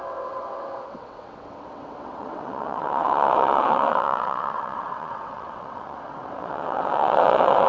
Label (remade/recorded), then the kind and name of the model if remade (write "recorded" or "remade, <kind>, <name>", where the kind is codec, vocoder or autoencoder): remade, vocoder, WaveNeXt